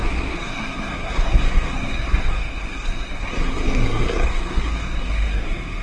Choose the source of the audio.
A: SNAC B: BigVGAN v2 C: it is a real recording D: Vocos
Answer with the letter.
A